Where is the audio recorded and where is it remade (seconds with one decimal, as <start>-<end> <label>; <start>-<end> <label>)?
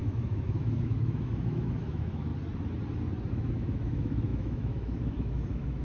0.0-2.3 remade; 2.3-3.3 recorded; 3.3-5.8 remade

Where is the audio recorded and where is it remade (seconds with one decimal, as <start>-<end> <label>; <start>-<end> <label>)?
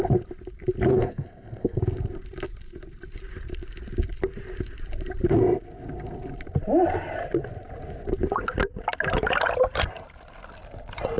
0.0-0.9 recorded; 0.9-1.8 remade; 1.8-11.2 recorded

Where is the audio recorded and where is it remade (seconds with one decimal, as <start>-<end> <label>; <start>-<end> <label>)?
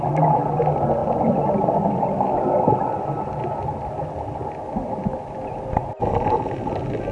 0.0-7.1 recorded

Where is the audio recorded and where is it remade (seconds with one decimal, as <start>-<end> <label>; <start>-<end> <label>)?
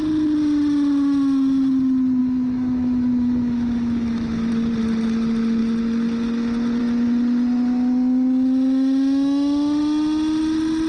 0.0-2.2 recorded; 2.2-4.5 remade; 4.5-10.9 recorded